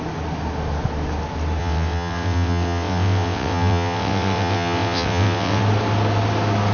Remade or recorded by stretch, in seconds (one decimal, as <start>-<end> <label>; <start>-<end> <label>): 0.0-1.6 recorded; 1.6-5.6 remade; 5.6-6.7 recorded

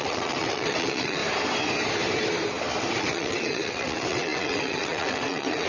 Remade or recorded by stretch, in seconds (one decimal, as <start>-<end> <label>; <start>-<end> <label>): 0.0-1.2 remade; 1.2-3.0 recorded; 3.0-5.7 remade

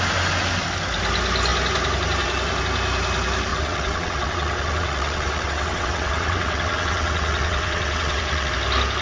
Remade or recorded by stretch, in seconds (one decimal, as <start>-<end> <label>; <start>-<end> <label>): 0.0-3.5 recorded; 3.5-8.5 remade; 8.5-9.0 recorded

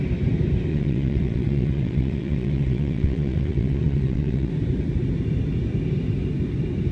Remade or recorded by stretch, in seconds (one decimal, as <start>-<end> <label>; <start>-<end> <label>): 0.0-0.7 recorded; 0.7-4.5 remade; 4.5-6.9 recorded

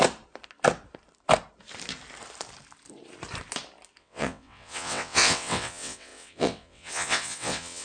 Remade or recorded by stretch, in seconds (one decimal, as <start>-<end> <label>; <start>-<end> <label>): 0.0-4.0 recorded; 4.0-7.8 remade